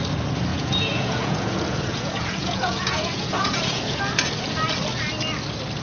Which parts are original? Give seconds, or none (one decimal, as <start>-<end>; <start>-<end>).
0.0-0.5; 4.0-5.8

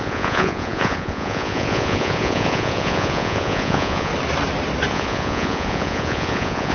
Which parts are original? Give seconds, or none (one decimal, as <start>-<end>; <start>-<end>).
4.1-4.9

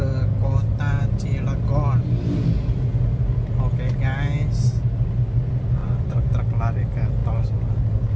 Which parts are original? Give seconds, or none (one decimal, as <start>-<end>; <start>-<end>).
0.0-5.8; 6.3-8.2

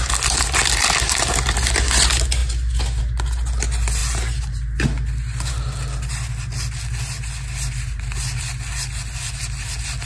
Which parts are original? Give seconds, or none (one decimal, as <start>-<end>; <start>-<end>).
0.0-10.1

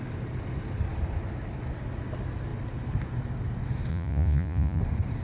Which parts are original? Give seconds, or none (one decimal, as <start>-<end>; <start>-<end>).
0.0-3.9; 4.8-5.2

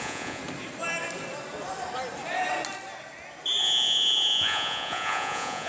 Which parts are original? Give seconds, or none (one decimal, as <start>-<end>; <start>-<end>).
0.4-3.6

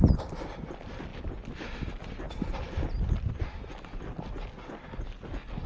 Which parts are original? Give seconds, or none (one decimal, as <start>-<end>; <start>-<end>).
0.0-5.7